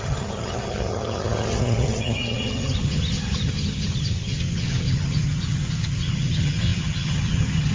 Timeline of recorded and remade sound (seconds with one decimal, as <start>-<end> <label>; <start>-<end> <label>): 0.0-7.7 remade

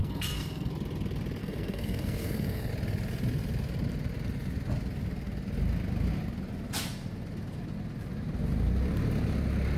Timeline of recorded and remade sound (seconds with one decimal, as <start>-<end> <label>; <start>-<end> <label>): 0.0-0.7 remade; 0.7-1.4 recorded; 1.4-2.7 remade; 2.7-9.8 recorded